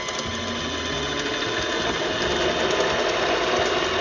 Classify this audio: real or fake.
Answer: real